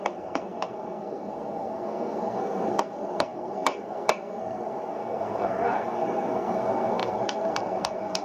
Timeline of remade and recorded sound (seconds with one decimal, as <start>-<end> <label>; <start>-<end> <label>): 0.0-8.2 remade